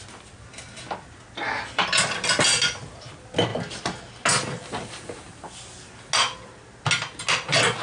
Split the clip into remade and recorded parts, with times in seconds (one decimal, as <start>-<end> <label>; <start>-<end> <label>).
0.0-7.8 recorded